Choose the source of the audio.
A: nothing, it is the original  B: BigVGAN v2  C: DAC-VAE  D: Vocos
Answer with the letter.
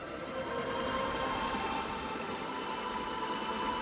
A